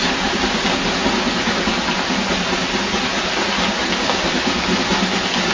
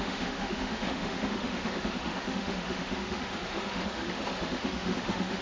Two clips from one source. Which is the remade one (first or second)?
second